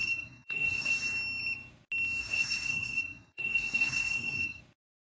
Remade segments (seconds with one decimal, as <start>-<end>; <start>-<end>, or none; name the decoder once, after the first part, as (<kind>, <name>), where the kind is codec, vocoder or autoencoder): 0.0-0.9 (codec, SNAC); 2.2-4.6